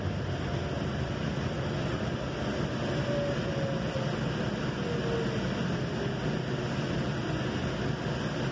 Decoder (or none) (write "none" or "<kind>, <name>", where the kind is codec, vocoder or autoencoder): none